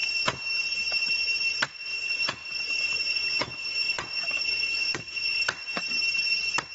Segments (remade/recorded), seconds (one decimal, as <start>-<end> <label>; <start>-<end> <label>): 0.0-1.9 recorded; 1.9-5.4 remade; 5.4-6.7 recorded